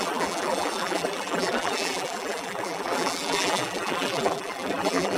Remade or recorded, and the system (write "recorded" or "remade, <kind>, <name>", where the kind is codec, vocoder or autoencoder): remade, vocoder, BigVGAN v2